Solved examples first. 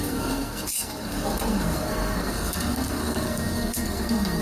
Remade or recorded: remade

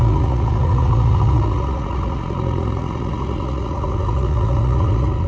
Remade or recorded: remade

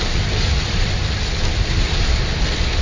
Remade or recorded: remade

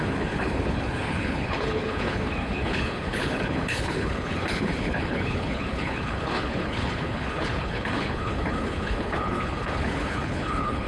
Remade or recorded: remade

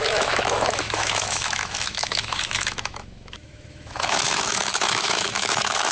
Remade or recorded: remade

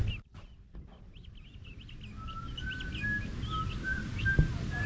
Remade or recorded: recorded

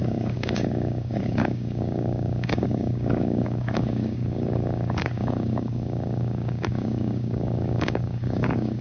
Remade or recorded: remade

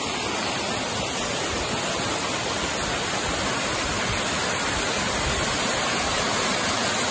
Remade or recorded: recorded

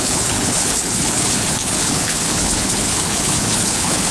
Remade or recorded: remade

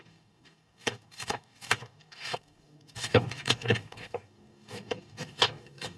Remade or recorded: remade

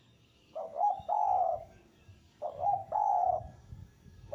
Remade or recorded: remade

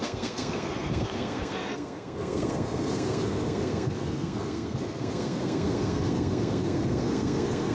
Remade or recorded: remade